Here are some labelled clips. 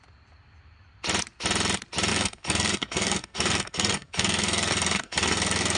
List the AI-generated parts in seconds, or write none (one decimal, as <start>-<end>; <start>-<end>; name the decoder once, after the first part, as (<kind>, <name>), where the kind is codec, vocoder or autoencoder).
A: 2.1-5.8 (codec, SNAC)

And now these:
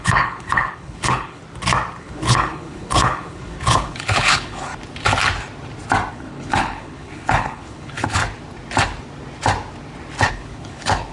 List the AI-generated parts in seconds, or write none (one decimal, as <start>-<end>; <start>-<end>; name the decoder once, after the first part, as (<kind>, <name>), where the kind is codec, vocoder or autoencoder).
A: 0.0-1.4 (codec, HILCodec); 2.0-4.7; 6.1-8.2; 10.3-11.1

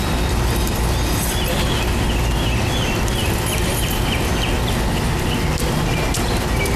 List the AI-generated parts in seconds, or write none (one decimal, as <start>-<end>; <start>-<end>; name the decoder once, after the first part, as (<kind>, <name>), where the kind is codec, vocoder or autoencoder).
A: none